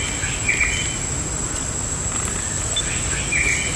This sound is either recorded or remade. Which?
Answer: recorded